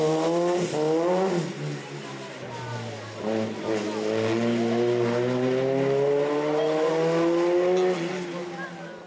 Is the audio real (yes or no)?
yes